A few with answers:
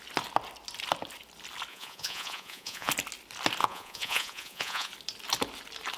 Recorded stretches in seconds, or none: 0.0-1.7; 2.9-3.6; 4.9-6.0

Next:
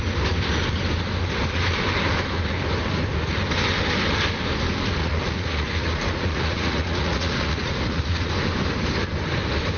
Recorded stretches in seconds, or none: 0.0-5.0; 8.3-9.8

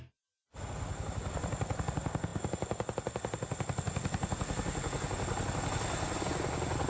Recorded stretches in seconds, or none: 0.0-6.9

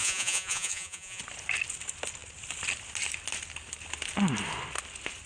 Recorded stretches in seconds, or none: 1.2-5.3

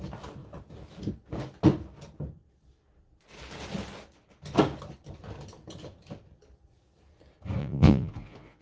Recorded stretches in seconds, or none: 0.0-7.6